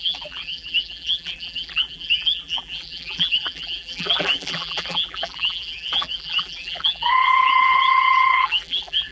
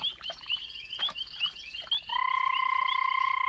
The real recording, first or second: second